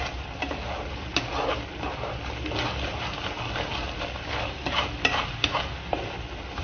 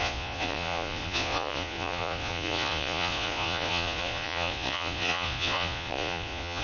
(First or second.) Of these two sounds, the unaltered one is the first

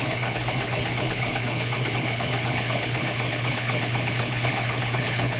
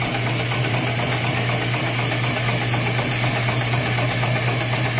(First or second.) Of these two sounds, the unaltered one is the second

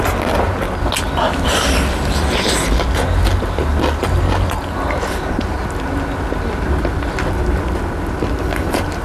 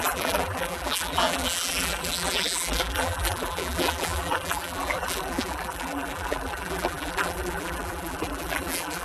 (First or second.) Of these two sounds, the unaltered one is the first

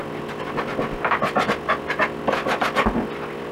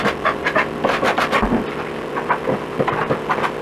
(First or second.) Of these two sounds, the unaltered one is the first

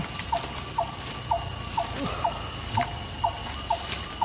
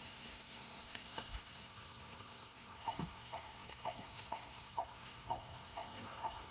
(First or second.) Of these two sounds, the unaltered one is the first